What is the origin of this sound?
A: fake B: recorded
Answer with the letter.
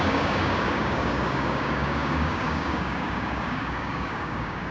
A